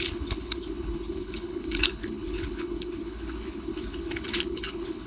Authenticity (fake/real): fake